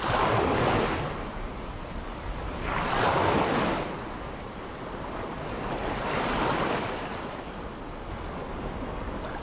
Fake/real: real